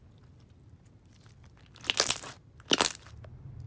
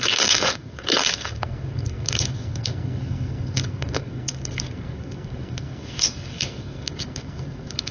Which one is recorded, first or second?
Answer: first